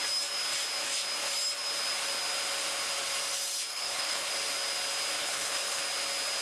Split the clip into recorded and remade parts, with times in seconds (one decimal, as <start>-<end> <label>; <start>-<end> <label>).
0.0-3.7 recorded; 3.7-4.3 remade; 4.3-5.2 recorded; 5.2-5.8 remade; 5.8-6.4 recorded